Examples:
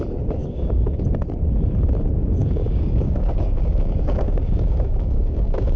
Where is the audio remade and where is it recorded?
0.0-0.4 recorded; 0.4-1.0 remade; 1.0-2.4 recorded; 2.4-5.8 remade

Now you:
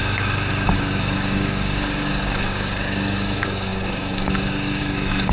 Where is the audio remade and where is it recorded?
0.0-5.3 remade

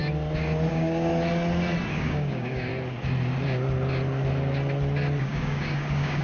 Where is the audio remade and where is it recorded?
0.0-0.7 recorded; 0.7-1.1 remade; 1.1-1.9 recorded; 1.9-2.7 remade; 2.7-5.2 recorded; 5.2-6.2 remade

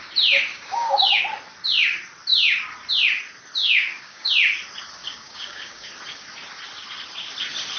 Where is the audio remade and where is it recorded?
0.0-0.5 recorded; 0.5-1.2 remade; 1.2-3.6 recorded; 3.6-4.3 remade; 4.3-5.0 recorded; 5.0-5.9 remade; 5.9-7.8 recorded

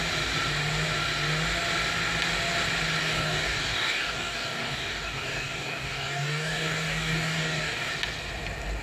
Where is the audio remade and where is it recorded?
0.0-3.0 recorded; 3.0-7.9 remade; 7.9-8.8 recorded

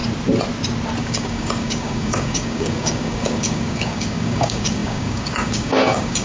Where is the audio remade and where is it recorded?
0.0-1.0 recorded; 1.0-6.2 remade

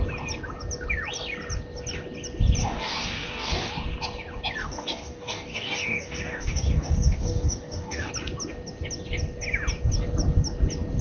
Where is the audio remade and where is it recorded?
0.0-2.6 recorded; 2.6-3.7 remade; 3.7-4.6 recorded; 4.6-8.1 remade; 8.1-11.0 recorded